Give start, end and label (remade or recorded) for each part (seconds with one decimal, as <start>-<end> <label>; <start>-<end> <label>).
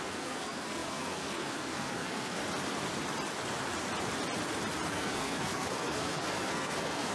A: 0.0-2.4 remade; 2.4-4.9 recorded; 4.9-7.1 remade